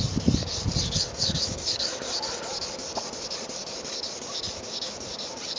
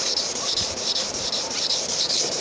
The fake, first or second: second